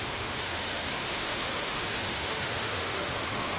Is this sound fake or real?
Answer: fake